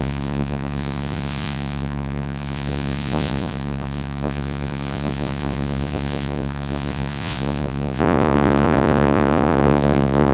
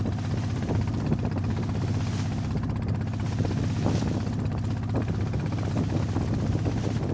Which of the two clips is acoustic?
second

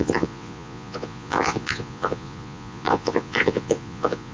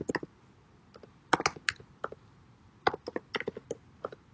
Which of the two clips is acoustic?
second